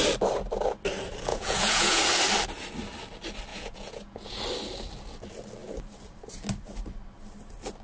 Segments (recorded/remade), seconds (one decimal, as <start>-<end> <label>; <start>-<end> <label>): 0.0-1.3 recorded; 1.3-2.0 remade; 2.0-3.5 recorded; 3.5-4.4 remade; 4.4-7.8 recorded

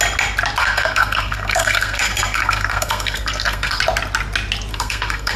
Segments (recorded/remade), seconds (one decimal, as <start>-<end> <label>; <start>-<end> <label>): 0.0-0.6 recorded; 0.6-3.8 remade; 3.8-4.7 recorded; 4.7-5.4 remade

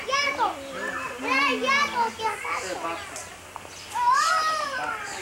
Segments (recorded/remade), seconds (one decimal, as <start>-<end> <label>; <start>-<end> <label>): 0.0-5.2 recorded

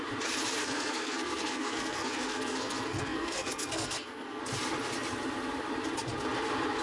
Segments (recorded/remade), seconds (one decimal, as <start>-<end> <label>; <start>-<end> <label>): 0.0-0.6 recorded; 0.6-4.4 remade; 4.4-6.8 recorded

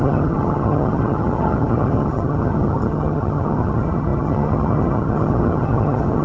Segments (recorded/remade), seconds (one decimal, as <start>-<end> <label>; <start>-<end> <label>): 0.0-6.2 remade

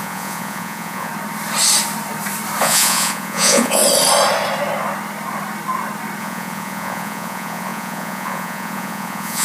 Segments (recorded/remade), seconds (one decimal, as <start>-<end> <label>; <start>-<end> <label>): 0.0-1.1 remade; 1.1-2.6 recorded; 2.6-3.8 remade; 3.8-6.2 recorded; 6.2-9.4 remade

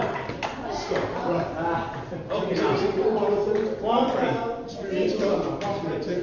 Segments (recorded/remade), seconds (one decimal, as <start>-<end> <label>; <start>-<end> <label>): 0.0-6.2 recorded

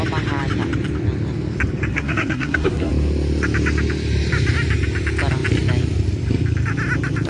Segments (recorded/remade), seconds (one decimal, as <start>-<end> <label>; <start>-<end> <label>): 0.0-1.9 recorded; 1.9-2.9 remade; 2.9-7.3 recorded